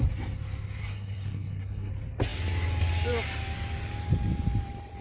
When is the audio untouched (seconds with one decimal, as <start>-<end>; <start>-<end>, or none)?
0.0-0.8; 1.9-5.0